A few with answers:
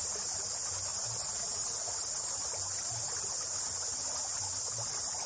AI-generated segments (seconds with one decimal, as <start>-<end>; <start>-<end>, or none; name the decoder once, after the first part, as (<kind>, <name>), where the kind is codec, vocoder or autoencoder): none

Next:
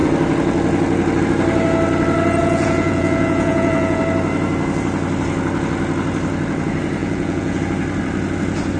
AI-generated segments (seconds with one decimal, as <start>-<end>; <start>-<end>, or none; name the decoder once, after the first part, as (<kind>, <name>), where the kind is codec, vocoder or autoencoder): 2.4-4.0 (vocoder, Vocos); 7.0-7.6

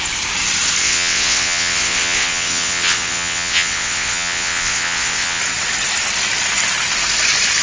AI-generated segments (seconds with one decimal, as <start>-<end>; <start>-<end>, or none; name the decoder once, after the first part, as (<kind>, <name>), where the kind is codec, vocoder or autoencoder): 0.8-5.4 (vocoder, WaveNeXt)

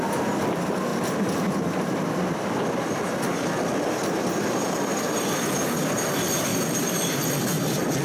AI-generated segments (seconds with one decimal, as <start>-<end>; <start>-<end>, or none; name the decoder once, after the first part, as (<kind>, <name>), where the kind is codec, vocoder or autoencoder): 6.5-7.4 (vocoder, BigVGAN v2)